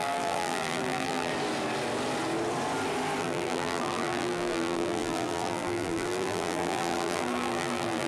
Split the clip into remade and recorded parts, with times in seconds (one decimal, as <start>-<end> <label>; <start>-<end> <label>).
0.0-1.3 remade; 1.3-3.2 recorded; 3.2-8.1 remade

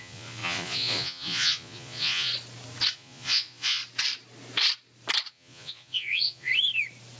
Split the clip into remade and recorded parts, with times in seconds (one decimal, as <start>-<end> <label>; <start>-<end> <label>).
0.0-2.3 remade; 2.3-2.9 recorded; 2.9-3.8 remade; 3.8-5.3 recorded; 5.3-6.5 remade; 6.5-7.2 recorded